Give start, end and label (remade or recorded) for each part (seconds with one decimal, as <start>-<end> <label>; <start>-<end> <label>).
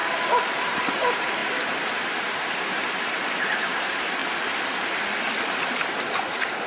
0.0-0.5 recorded; 0.5-1.4 remade; 1.4-2.2 recorded; 2.2-4.2 remade; 4.2-6.1 recorded; 6.1-6.7 remade